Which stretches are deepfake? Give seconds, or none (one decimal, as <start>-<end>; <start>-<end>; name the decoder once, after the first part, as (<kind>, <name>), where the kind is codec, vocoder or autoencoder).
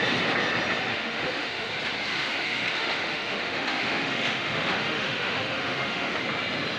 0.9-1.7 (autoencoder, DAC-VAE); 2.1-6.2